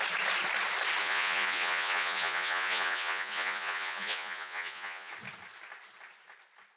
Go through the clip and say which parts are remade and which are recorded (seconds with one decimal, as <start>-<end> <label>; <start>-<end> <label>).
0.0-1.0 recorded; 1.0-5.1 remade; 5.1-6.8 recorded